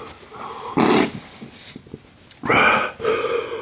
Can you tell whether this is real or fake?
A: real